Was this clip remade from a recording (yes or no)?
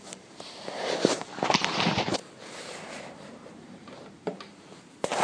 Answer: yes